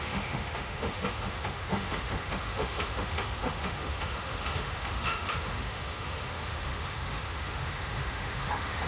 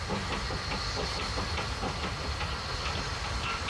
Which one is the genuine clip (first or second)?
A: second